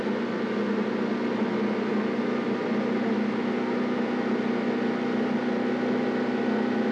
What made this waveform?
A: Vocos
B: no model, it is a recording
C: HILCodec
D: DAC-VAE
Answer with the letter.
B